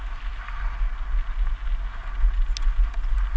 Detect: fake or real real